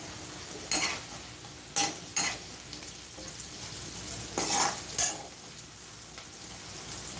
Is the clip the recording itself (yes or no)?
yes